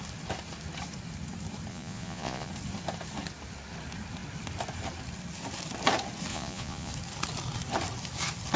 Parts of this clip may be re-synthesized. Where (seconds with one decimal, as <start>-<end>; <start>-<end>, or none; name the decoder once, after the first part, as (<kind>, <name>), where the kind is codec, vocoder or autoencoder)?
1.7-2.5 (vocoder, Vocos); 6.3-6.9